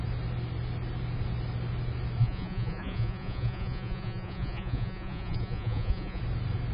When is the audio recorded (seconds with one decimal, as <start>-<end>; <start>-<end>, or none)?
0.0-2.2; 6.2-6.7